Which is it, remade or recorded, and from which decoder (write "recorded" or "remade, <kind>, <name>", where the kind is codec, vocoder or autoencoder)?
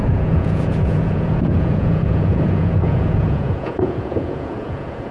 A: remade, vocoder, Vocos